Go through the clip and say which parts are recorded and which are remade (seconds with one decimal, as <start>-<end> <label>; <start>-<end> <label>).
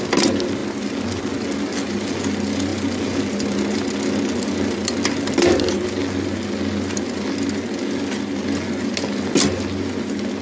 0.0-10.4 recorded